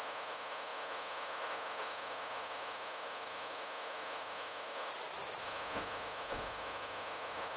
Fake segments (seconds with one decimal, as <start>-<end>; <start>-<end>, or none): 0.0-4.9; 5.4-7.6